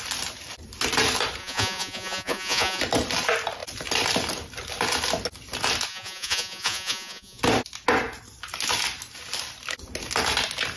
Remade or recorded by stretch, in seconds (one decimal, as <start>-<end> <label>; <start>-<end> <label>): 0.0-1.4 recorded; 1.4-2.8 remade; 2.8-5.9 recorded; 5.9-7.4 remade; 7.4-10.8 recorded